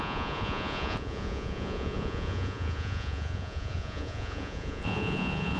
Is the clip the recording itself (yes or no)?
no